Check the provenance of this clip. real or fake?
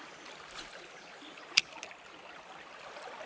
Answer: real